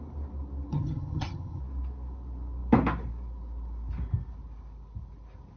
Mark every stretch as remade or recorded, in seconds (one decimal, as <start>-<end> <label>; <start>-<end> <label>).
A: 0.0-0.7 recorded; 0.7-1.6 remade; 1.6-5.6 recorded